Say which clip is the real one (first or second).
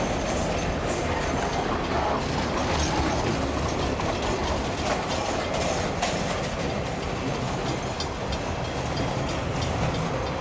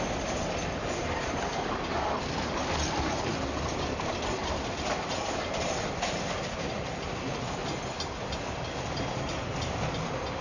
first